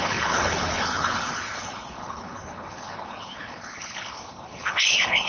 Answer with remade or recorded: remade